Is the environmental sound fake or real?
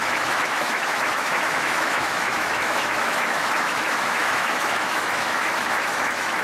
fake